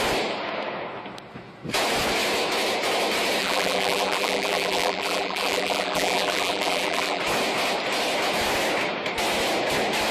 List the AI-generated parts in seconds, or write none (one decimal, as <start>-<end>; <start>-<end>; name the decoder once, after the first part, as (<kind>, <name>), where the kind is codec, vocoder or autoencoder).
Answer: 3.4-7.2 (vocoder, BigVGAN v2)